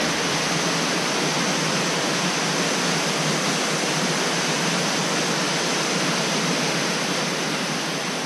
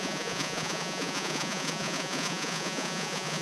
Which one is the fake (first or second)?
second